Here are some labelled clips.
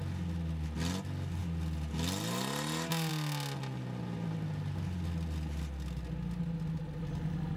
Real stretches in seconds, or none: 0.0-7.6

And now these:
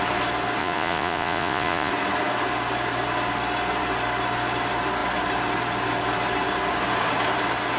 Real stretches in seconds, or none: 0.0-0.6; 1.9-7.8

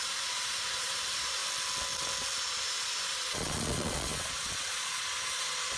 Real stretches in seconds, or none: 1.4-2.4